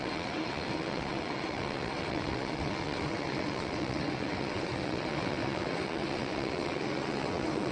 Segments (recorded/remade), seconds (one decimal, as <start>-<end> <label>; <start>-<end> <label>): 0.0-7.7 remade